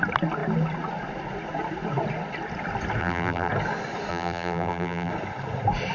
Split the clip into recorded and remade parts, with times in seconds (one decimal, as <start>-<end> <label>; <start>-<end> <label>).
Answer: 0.0-3.0 recorded; 3.0-3.5 remade; 3.5-4.1 recorded; 4.1-5.1 remade; 5.1-5.9 recorded